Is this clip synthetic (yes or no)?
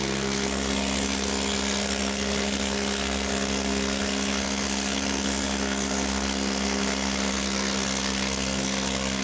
yes